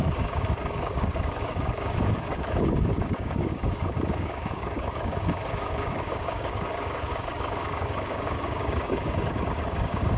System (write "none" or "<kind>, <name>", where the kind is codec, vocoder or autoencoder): codec, DAC